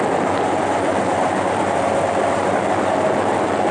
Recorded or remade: recorded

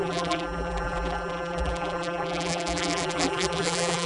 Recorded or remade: remade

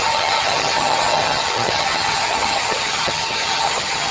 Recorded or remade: remade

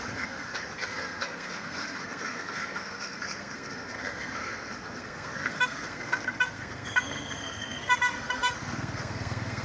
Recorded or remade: remade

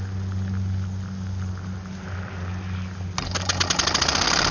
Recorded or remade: recorded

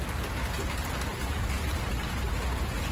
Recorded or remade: recorded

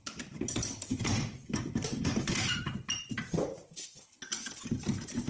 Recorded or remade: recorded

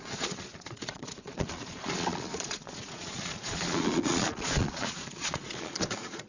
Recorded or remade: remade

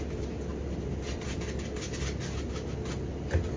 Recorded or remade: recorded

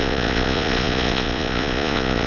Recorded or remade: remade